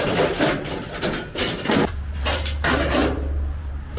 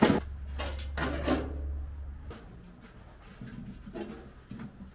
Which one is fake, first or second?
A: first